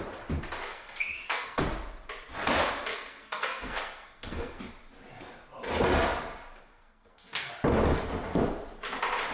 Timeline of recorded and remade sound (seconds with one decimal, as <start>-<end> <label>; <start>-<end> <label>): 0.0-0.7 recorded; 0.7-1.6 remade; 1.6-2.9 recorded; 2.9-4.6 remade; 4.6-6.6 recorded; 6.6-7.5 remade; 7.5-9.3 recorded